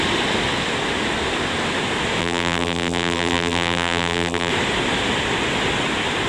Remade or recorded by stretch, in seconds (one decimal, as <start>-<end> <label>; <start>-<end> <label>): 0.0-2.2 recorded; 2.2-4.5 remade; 4.5-6.3 recorded